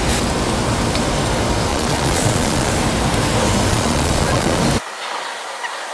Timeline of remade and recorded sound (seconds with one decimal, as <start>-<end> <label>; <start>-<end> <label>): 0.0-1.7 recorded; 1.7-2.7 remade; 2.7-3.7 recorded; 3.7-4.6 remade; 4.6-5.9 recorded